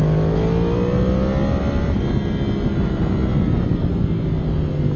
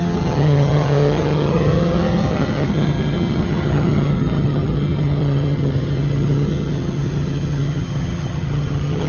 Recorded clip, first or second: first